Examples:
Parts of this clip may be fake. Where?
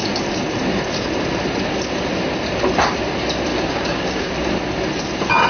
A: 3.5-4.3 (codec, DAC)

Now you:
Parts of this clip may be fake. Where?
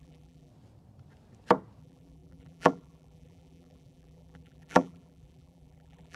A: 0.0-0.5 (vocoder, BigVGAN v2); 1.8-6.2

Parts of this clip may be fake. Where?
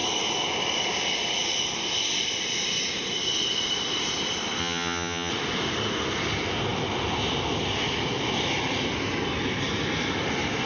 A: 4.6-5.3 (vocoder, HiFi-GAN)